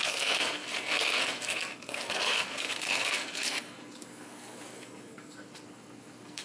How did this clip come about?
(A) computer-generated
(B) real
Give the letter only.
A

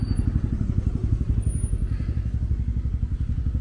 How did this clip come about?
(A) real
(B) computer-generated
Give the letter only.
A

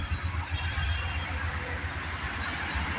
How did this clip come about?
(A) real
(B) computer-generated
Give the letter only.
A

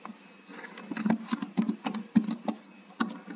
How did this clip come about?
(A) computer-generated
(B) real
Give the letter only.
B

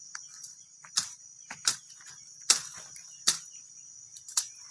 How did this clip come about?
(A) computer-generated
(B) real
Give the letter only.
B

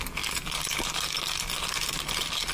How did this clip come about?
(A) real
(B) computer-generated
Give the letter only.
A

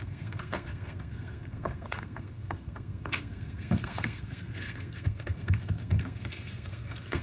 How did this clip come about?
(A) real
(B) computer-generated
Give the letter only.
B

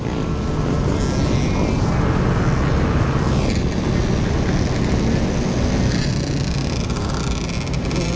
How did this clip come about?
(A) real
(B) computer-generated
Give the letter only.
A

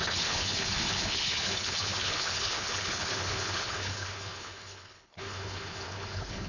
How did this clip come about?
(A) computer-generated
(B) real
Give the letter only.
A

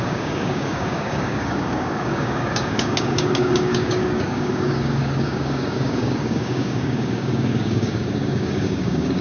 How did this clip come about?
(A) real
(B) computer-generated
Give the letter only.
B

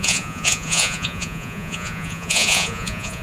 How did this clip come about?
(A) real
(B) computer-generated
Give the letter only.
B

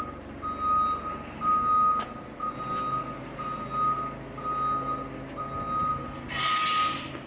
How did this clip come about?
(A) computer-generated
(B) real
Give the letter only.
B